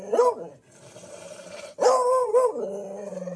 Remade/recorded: recorded